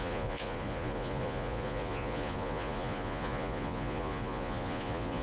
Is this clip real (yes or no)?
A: no